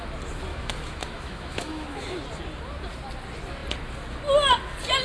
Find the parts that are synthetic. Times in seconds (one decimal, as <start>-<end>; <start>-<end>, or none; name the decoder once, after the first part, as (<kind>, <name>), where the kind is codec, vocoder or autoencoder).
0.5-2.1 (autoencoder, DAC-VAE)